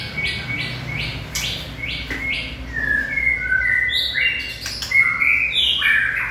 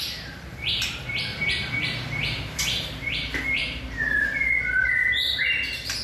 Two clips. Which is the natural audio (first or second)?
first